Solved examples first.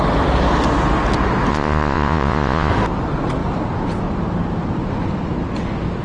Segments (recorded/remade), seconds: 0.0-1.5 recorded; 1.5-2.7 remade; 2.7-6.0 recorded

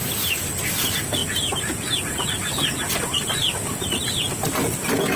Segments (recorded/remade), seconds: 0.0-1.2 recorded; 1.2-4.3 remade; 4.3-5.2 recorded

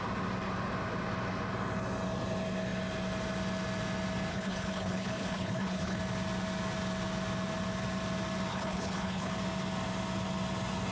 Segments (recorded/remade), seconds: 0.0-4.3 recorded; 4.3-6.0 remade; 6.0-8.5 recorded; 8.5-9.3 remade; 9.3-10.9 recorded